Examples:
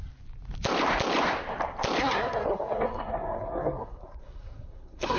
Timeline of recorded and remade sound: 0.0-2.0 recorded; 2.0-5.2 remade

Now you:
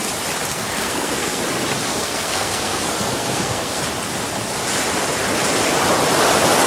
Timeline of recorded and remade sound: 0.0-0.5 recorded; 0.5-1.4 remade; 1.4-1.9 recorded; 1.9-3.8 remade; 3.8-6.7 recorded

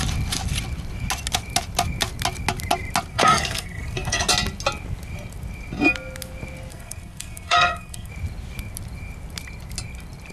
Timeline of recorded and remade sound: 0.0-3.1 recorded; 3.1-4.3 remade; 4.3-6.7 recorded; 6.7-8.1 remade; 8.1-10.3 recorded